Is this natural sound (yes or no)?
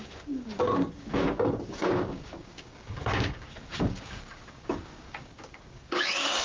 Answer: no